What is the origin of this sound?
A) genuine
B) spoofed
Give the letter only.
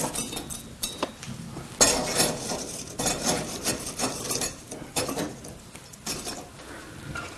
A